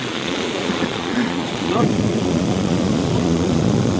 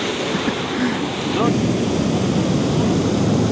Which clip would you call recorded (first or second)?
second